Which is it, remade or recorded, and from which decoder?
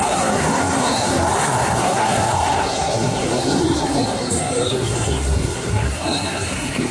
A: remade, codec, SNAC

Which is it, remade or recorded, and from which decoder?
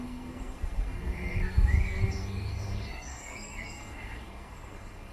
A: remade, codec, SNAC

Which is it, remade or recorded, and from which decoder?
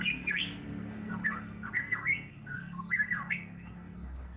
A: remade, codec, SNAC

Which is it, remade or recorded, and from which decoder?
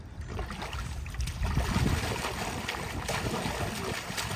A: recorded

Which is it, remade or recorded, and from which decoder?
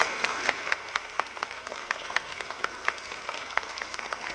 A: remade, codec, SNAC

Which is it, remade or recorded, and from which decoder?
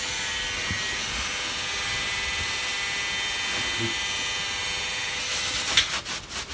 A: recorded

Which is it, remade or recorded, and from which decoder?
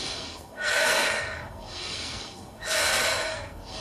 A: remade, codec, SNAC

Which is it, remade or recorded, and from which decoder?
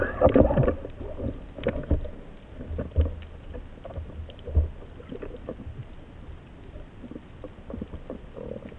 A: recorded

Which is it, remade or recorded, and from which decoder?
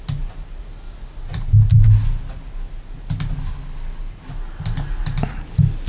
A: recorded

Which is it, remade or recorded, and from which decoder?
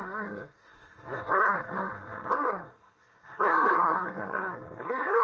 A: remade, codec, SNAC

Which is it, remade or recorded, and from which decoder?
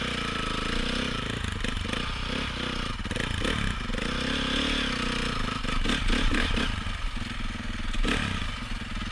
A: recorded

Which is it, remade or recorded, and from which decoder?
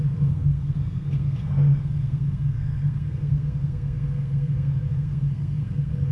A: remade, codec, SNAC